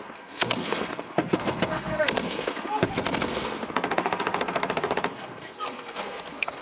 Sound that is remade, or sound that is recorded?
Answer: remade